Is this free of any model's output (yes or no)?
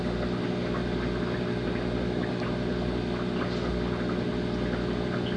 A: yes